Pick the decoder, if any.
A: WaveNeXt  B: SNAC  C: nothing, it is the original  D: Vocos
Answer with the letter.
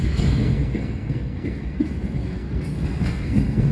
B